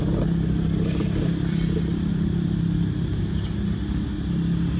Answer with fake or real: real